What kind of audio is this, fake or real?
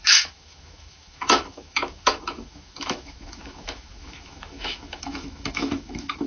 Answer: fake